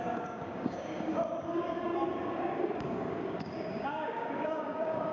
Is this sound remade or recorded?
remade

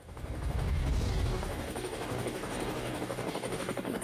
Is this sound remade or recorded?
remade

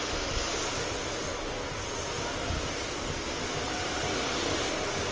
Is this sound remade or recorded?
recorded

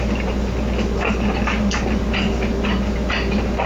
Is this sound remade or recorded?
recorded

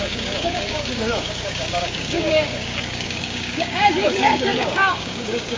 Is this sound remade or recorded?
remade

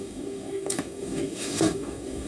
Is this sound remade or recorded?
remade